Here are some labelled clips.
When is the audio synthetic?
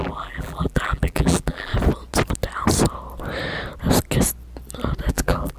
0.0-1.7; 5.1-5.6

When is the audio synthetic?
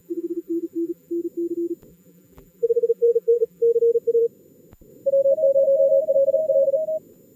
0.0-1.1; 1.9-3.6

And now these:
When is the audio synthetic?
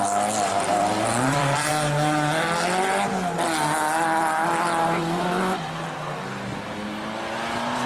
0.7-1.7; 5.0-5.6